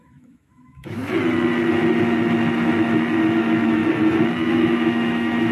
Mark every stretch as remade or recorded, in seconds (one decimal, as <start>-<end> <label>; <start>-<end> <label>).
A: 0.0-1.0 remade; 1.0-3.4 recorded; 3.4-3.8 remade; 3.8-4.5 recorded; 4.5-5.5 remade